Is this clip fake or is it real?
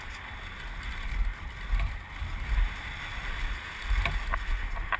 real